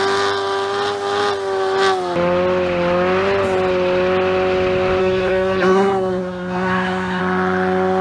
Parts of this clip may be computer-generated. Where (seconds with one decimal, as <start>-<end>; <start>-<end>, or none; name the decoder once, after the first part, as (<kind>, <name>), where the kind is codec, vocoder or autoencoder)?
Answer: 5.0-7.2 (codec, SNAC)